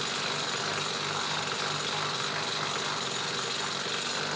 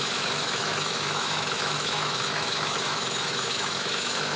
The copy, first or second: second